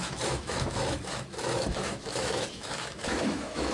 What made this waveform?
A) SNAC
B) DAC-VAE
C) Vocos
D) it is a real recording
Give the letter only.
B